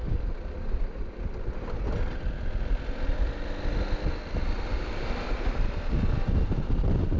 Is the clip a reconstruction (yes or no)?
no